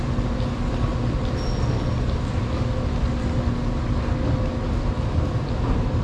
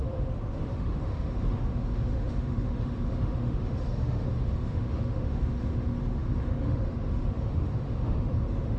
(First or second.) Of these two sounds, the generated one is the second